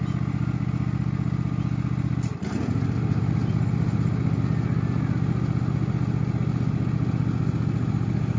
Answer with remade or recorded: recorded